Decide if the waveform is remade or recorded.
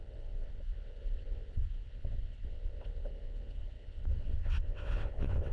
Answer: remade